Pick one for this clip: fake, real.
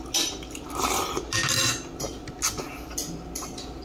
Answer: real